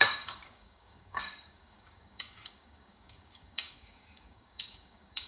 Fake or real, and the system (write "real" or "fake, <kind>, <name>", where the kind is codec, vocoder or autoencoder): fake, codec, DAC